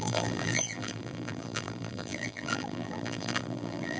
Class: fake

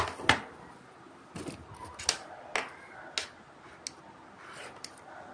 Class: real